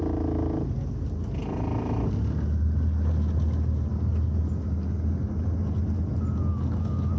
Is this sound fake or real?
real